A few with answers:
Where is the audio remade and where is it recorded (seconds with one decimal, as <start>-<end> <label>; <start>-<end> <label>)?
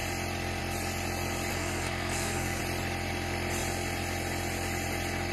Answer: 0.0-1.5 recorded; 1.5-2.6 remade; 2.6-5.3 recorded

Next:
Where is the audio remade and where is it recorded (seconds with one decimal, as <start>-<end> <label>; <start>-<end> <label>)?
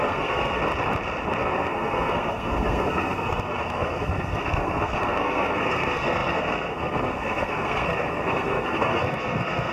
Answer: 0.0-0.6 remade; 0.6-1.4 recorded; 1.4-9.7 remade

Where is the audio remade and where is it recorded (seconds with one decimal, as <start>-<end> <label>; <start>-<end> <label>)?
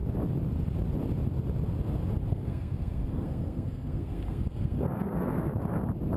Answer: 0.0-2.3 recorded; 2.3-5.6 remade; 5.6-6.2 recorded